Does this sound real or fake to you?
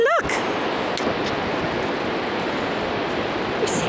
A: real